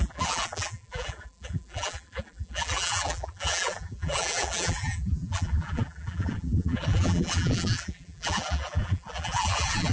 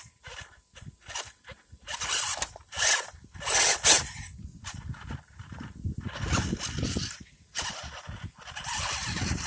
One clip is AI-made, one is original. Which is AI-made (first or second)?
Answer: first